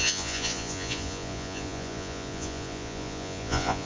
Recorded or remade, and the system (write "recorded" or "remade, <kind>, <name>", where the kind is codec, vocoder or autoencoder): remade, vocoder, Vocos